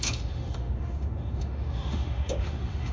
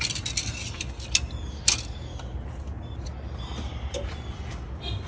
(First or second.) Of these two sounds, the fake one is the first